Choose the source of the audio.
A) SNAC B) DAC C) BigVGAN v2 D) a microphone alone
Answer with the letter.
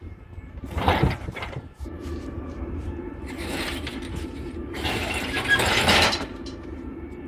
C